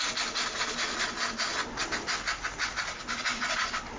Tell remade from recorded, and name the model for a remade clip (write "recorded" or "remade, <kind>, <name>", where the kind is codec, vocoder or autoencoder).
recorded